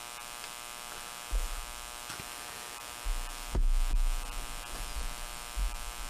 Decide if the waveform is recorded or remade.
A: recorded